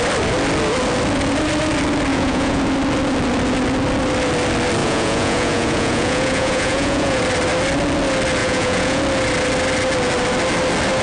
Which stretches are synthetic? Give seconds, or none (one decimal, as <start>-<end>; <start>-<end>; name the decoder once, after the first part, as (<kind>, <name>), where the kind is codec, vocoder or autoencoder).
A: 2.1-2.6 (vocoder, Vocos); 4.8-7.2; 8.4-9.0